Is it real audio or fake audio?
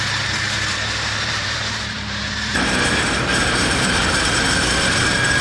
fake